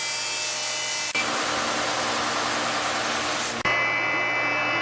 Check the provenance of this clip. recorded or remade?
recorded